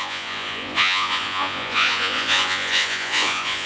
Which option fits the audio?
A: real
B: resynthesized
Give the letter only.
B